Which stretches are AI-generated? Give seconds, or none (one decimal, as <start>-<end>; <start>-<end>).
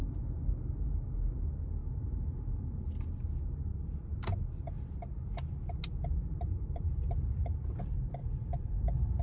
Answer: 1.8-2.8; 3.7-5.5; 6.2-7.8; 8.2-9.2